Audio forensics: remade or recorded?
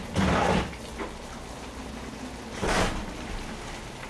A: recorded